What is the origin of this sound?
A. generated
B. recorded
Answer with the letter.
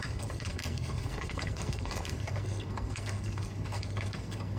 A